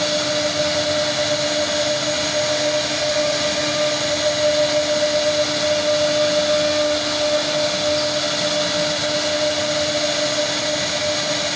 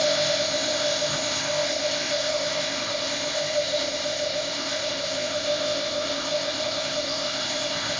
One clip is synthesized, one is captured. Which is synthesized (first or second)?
second